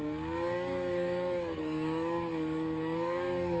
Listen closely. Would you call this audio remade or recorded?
remade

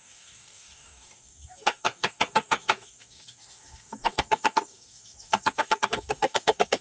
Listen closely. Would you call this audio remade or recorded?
remade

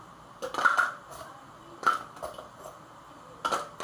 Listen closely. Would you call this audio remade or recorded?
recorded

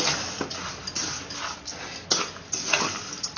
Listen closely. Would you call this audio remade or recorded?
recorded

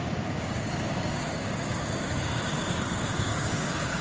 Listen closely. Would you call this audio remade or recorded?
remade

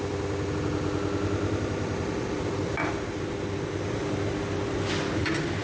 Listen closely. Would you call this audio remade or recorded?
recorded